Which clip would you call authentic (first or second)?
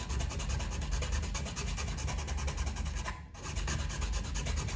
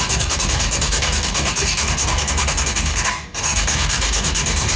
first